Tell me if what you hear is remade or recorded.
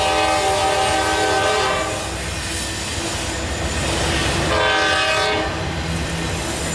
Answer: recorded